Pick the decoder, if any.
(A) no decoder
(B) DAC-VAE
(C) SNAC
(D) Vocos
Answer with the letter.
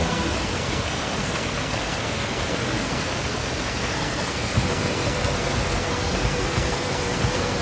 C